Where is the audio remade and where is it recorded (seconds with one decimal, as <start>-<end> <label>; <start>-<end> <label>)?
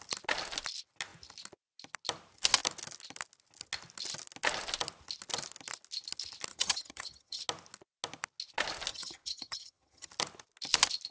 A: 0.0-6.5 recorded; 6.5-7.4 remade; 7.4-8.9 recorded; 8.9-10.1 remade; 10.1-11.1 recorded